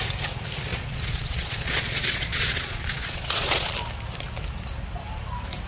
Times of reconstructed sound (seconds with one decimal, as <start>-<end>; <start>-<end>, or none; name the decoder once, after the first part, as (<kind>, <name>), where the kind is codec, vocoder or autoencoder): 0.7-3.7 (vocoder, Vocos)